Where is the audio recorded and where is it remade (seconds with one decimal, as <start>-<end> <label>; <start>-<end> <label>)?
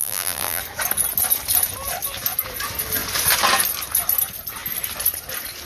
0.0-0.6 remade; 0.6-5.7 recorded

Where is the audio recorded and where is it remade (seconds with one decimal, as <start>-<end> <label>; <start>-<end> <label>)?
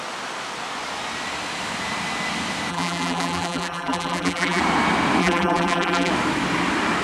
0.0-2.7 recorded; 2.7-4.6 remade; 4.6-5.2 recorded; 5.2-6.1 remade; 6.1-7.0 recorded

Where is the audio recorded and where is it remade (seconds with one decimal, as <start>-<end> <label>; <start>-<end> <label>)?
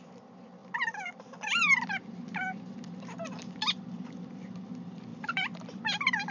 0.0-5.1 recorded; 5.1-5.8 remade; 5.8-6.3 recorded